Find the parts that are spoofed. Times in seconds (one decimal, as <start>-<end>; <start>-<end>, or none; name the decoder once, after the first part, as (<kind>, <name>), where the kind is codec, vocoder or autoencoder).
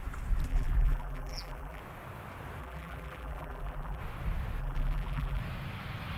0.5-1.8 (vocoder, BigVGAN v2); 2.6-4.0; 4.6-5.4